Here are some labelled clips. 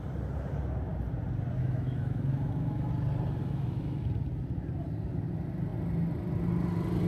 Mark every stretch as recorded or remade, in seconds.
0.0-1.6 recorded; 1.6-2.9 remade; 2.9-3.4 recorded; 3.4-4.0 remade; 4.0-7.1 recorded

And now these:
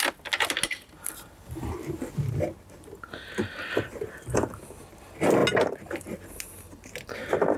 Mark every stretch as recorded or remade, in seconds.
0.0-7.6 recorded